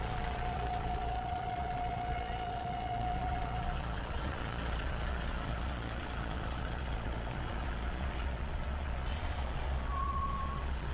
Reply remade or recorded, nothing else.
remade